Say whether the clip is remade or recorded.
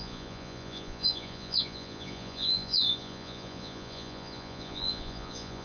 remade